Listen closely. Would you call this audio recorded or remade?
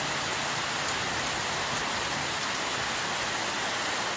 recorded